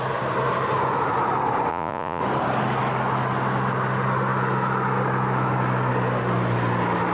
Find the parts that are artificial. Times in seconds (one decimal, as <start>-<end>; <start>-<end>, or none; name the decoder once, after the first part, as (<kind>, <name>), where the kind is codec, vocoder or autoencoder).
1.7-2.2 (vocoder, Vocos)